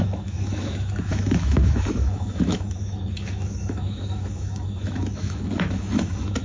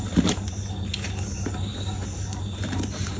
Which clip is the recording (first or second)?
second